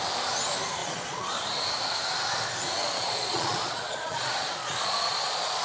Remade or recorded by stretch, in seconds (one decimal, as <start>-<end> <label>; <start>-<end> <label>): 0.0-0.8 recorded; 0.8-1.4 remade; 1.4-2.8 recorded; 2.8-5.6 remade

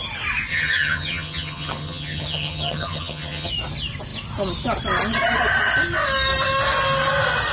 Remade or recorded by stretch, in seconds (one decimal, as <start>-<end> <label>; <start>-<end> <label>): 0.0-0.5 recorded; 0.5-3.5 remade; 3.5-7.5 recorded

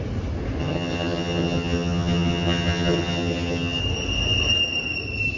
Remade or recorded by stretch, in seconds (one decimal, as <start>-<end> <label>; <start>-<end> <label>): 0.0-0.6 recorded; 0.6-3.8 remade; 3.8-5.4 recorded